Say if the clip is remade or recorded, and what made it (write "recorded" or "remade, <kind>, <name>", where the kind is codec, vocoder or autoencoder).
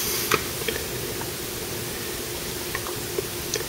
recorded